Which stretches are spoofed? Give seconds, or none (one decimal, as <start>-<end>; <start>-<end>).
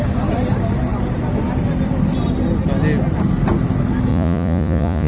4.1-5.1